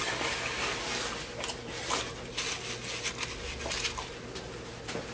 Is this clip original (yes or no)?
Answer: yes